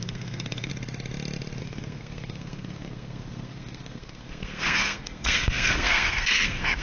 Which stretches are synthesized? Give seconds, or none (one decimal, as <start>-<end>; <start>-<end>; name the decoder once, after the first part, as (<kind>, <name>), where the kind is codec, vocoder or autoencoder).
0.0-0.7 (codec, SNAC); 1.6-6.8